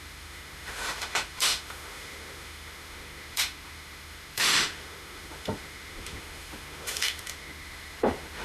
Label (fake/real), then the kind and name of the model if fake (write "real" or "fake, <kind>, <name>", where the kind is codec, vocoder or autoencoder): fake, autoencoder, DAC-VAE